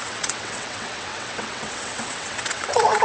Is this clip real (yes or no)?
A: no